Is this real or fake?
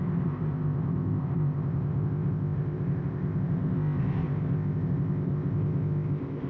fake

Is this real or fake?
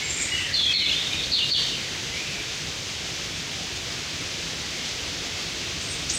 real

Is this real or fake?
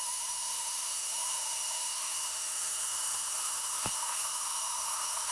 fake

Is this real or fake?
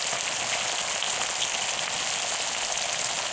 real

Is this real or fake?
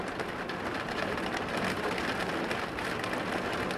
real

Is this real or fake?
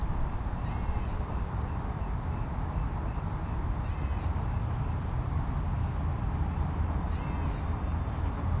real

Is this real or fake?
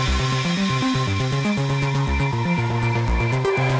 real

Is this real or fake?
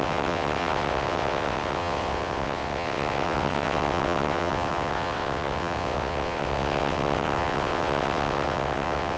fake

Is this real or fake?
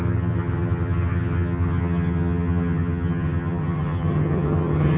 fake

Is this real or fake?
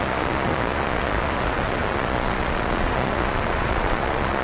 fake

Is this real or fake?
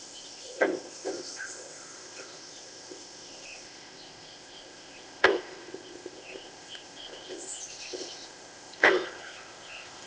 fake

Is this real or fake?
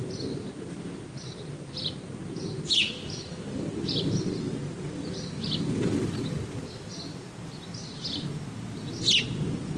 real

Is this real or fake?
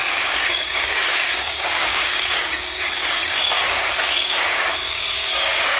fake